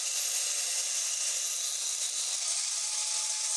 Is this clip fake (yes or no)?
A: no